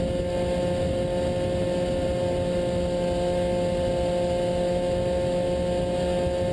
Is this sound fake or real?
real